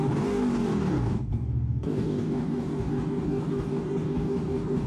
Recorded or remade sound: remade